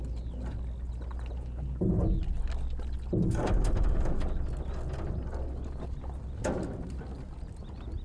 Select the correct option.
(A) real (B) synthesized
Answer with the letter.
A